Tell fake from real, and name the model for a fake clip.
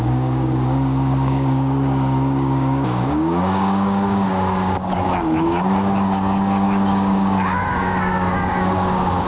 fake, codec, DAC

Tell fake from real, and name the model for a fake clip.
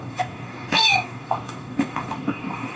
fake, codec, DAC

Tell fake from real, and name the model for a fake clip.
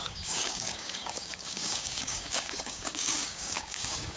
fake, codec, DAC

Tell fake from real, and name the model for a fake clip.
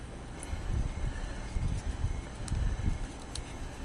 real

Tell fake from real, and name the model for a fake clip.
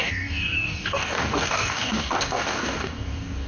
fake, codec, DAC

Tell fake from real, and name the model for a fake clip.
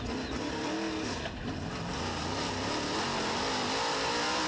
real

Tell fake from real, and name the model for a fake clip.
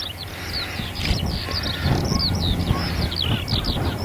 real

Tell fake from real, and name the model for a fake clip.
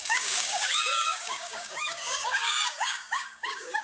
fake, codec, DAC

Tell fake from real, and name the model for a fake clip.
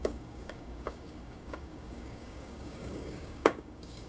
fake, codec, DAC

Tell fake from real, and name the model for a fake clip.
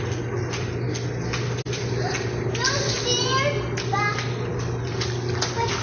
real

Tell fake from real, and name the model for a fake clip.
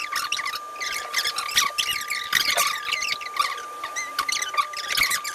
real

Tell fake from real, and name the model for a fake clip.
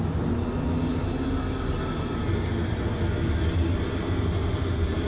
real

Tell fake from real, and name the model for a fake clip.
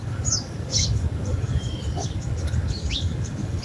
fake, codec, DAC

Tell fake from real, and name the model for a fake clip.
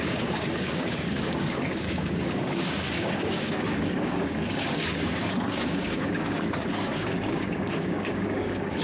fake, codec, DAC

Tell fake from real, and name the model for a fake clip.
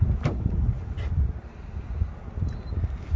real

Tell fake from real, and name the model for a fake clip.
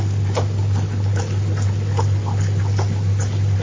real